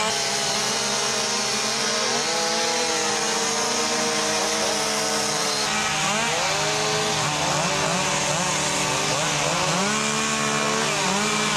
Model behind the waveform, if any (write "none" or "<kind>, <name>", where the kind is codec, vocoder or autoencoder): none